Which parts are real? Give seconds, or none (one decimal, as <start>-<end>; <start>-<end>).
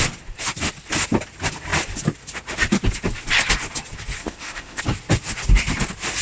0.0-4.2; 4.8-6.2